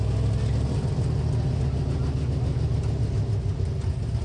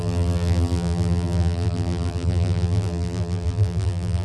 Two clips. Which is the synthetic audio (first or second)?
second